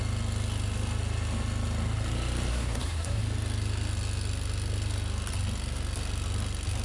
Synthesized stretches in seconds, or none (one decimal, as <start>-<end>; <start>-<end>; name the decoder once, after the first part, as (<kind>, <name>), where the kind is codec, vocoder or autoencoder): 2.5-3.2 (codec, SNAC)